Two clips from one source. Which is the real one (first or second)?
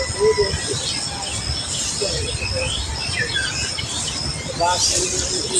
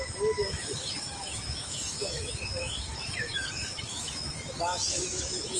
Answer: first